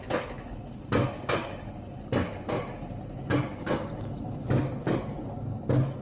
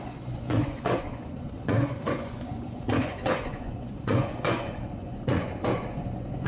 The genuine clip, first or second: first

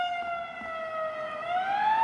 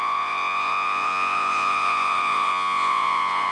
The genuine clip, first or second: first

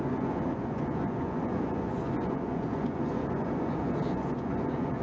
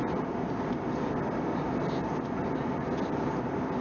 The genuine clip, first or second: second